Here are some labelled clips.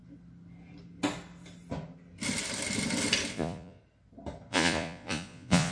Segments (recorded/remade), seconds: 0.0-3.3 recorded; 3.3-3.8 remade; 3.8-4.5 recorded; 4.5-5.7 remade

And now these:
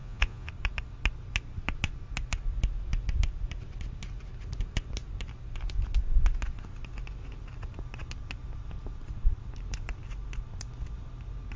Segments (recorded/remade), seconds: 0.0-0.5 remade; 0.5-11.6 recorded

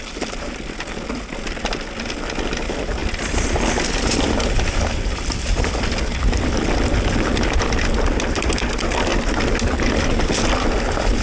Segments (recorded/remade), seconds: 0.0-9.1 remade; 9.1-9.9 recorded; 9.9-11.2 remade

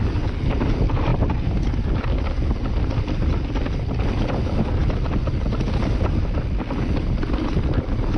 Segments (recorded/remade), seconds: 0.0-8.2 recorded

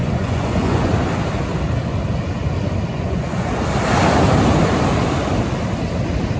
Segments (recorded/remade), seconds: 0.0-0.9 remade; 0.9-2.9 recorded; 2.9-3.5 remade; 3.5-6.4 recorded

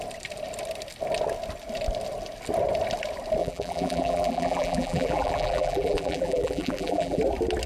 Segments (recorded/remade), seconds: 0.0-3.4 recorded; 3.4-7.2 remade; 7.2-7.7 recorded

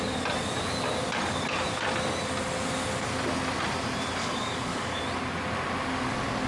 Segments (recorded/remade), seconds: 0.0-4.2 recorded; 4.2-5.0 remade; 5.0-6.5 recorded